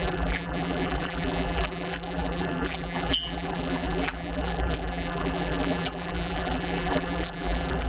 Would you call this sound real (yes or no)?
no